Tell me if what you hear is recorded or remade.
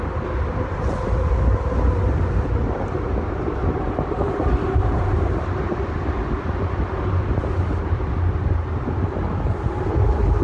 recorded